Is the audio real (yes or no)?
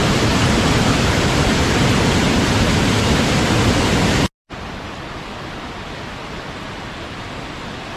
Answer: yes